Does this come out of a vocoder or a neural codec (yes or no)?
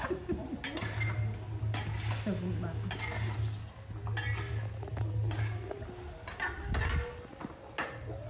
no